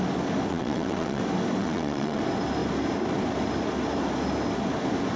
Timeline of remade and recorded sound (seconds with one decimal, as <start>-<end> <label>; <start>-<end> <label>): 0.0-0.5 recorded; 0.5-1.2 remade; 1.2-1.6 recorded; 1.6-2.2 remade; 2.2-5.2 recorded

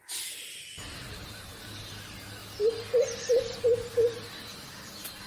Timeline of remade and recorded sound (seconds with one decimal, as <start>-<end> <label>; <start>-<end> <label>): 0.0-1.2 recorded; 1.2-1.9 remade; 1.9-5.3 recorded

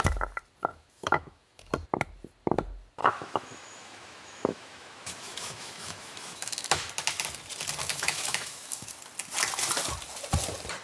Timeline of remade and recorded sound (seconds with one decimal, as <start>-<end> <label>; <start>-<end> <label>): 0.0-0.7 recorded; 0.7-1.7 remade; 1.7-3.0 recorded; 3.0-6.9 remade; 6.9-7.8 recorded; 7.8-8.9 remade; 8.9-10.8 recorded

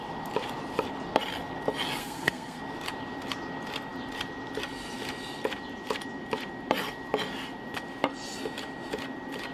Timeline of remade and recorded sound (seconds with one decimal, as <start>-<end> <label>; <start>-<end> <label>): 0.0-2.0 recorded; 2.0-2.6 remade; 2.6-9.5 recorded

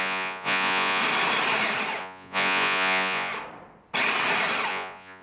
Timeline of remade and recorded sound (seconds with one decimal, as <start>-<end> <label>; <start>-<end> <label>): 0.0-1.0 remade; 1.0-2.0 recorded; 2.0-3.3 remade; 3.3-4.7 recorded; 4.7-5.2 remade